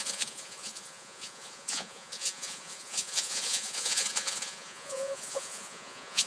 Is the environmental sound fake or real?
fake